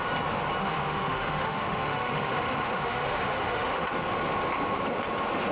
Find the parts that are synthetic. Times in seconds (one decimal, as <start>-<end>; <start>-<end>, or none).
0.6-3.9